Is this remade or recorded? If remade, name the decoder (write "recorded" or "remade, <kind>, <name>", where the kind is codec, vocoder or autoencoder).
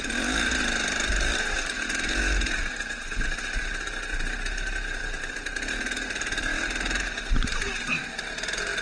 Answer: recorded